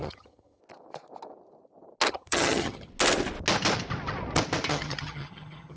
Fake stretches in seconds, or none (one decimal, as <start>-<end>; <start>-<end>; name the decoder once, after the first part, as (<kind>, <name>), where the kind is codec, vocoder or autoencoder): 0.0-0.6 (vocoder, HiFi-GAN); 2.1-2.9; 4.7-5.8